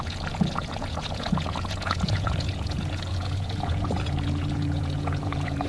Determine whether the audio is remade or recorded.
remade